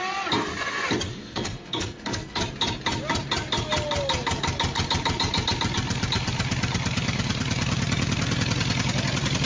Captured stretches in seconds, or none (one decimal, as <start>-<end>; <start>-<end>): 0.0-1.2; 2.4-9.5